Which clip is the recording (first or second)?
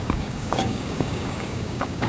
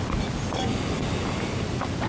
second